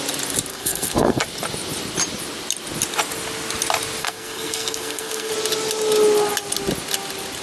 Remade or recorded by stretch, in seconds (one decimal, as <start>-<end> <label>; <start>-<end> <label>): 0.0-0.5 recorded; 0.5-1.2 remade; 1.2-4.0 recorded; 4.0-5.3 remade; 5.3-7.4 recorded